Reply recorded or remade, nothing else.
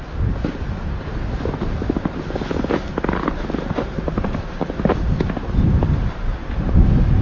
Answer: recorded